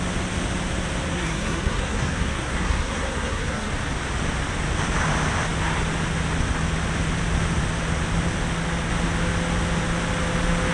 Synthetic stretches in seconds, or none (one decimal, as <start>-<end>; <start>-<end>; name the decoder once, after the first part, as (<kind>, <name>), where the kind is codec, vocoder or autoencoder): 1.1-3.7 (codec, SNAC)